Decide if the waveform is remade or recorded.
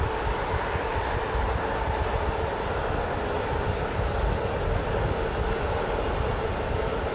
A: recorded